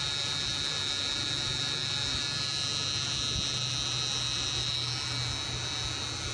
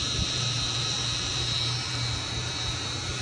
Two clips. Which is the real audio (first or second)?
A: first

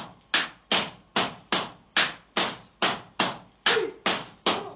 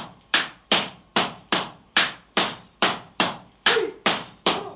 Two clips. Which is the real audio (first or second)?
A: first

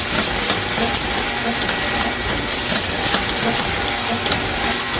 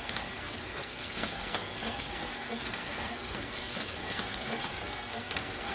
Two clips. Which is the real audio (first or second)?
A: first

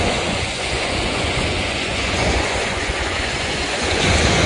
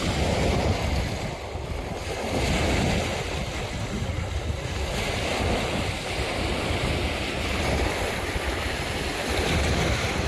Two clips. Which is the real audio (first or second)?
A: second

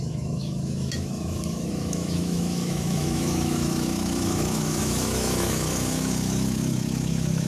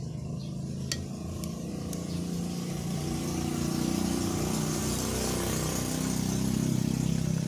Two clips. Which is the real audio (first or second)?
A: second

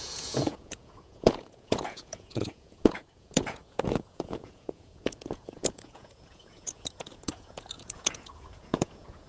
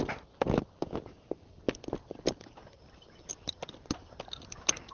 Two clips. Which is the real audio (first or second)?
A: second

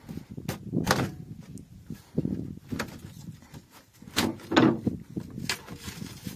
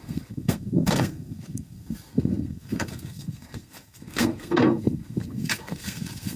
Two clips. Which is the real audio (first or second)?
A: first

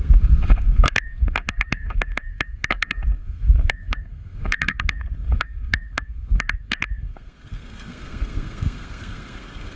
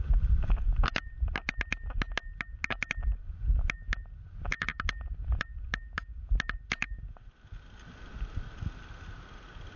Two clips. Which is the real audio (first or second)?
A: second